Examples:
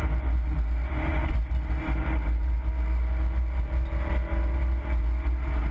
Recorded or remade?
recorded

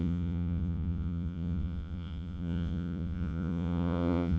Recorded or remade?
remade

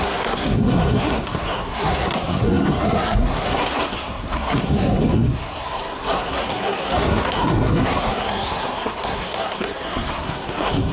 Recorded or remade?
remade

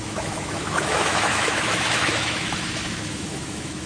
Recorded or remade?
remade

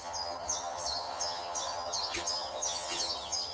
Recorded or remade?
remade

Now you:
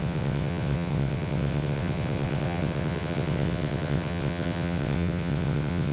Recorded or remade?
remade